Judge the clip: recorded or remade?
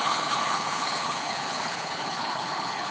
remade